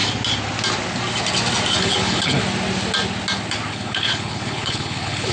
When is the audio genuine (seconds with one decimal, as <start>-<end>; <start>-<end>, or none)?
0.0-1.8; 2.4-3.7